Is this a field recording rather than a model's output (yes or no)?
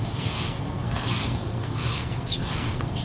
no